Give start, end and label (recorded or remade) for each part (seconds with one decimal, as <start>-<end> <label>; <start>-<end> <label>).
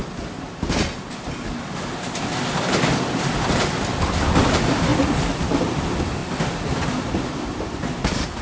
0.0-3.1 recorded; 3.1-8.4 remade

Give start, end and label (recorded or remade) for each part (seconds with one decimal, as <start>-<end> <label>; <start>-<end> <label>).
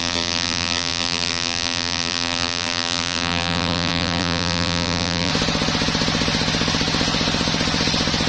0.0-5.3 remade; 5.3-8.3 recorded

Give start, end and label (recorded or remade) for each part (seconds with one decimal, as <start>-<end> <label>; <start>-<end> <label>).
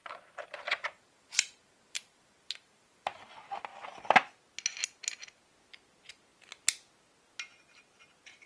0.0-3.3 remade; 3.3-8.5 recorded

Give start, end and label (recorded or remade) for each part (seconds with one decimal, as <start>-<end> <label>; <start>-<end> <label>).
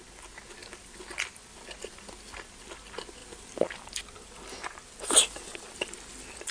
0.0-3.2 recorded; 3.2-4.0 remade; 4.0-6.5 recorded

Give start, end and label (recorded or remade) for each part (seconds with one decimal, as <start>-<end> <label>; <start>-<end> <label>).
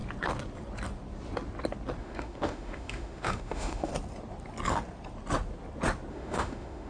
0.0-2.0 recorded; 2.0-3.9 remade; 3.9-6.1 recorded; 6.1-6.9 remade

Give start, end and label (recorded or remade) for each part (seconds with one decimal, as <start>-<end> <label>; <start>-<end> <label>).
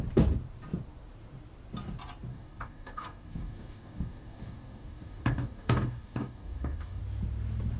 0.0-2.3 recorded; 2.3-7.0 remade; 7.0-7.8 recorded